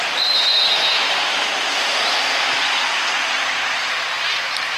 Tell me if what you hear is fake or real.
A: real